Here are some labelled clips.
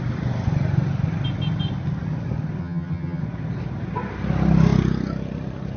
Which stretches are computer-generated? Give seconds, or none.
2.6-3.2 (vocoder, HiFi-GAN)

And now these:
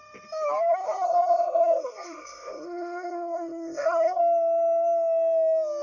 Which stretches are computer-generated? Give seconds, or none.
0.7-4.2 (codec, SNAC)

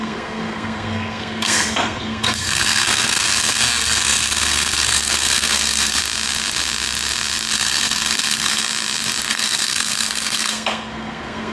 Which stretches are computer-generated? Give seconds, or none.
0.0-6.0 (codec, SNAC); 7.5-8.6; 9.3-11.5

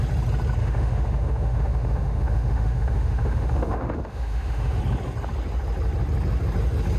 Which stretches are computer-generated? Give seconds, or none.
0.6-4.8 (autoencoder, DAC-VAE)

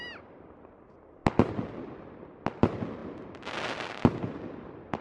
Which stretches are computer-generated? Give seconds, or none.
none

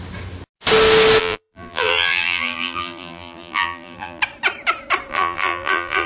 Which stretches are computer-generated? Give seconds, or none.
1.2-4.2 (vocoder, BigVGAN v2); 5.1-6.1